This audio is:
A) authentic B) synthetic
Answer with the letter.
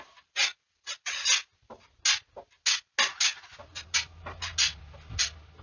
A